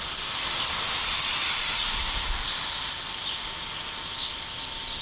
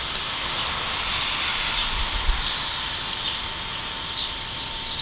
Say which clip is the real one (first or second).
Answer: second